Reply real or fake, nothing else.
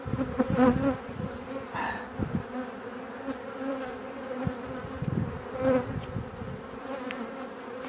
real